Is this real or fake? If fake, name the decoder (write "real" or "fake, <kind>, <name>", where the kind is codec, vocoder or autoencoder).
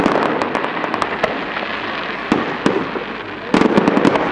real